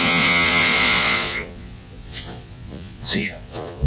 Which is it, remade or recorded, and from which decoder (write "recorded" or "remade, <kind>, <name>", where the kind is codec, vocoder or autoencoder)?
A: remade, vocoder, Vocos